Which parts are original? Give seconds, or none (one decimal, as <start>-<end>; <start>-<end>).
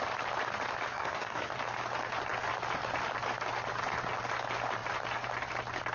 0.0-0.9; 1.5-5.9